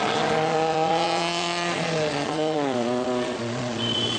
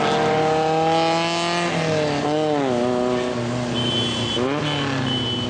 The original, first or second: second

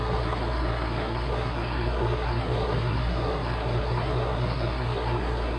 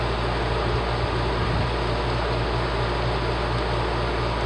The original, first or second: second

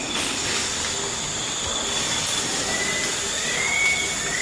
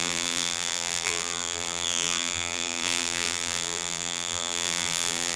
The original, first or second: first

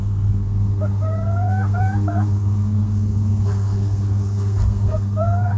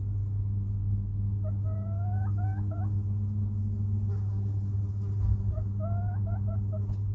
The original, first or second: second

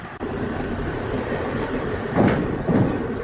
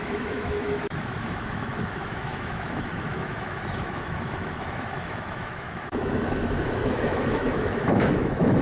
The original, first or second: first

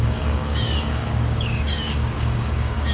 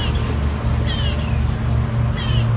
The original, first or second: second